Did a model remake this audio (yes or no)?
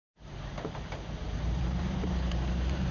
yes